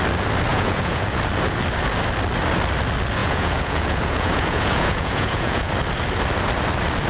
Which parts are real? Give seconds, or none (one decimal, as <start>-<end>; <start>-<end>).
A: 0.0-0.5; 1.2-3.2; 5.7-7.1